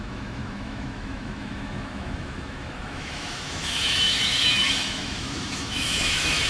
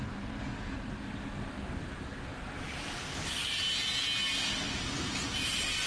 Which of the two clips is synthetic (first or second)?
first